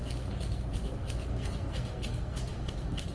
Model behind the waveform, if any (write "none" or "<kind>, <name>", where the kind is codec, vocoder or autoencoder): codec, SNAC